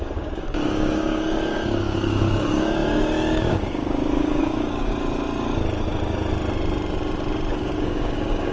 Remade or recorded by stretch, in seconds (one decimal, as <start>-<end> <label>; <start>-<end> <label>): 0.0-4.9 remade; 4.9-7.5 recorded; 7.5-8.5 remade